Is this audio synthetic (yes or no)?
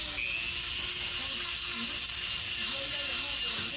no